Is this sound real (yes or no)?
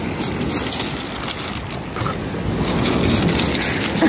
yes